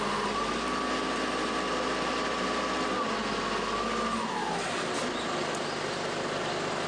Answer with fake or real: real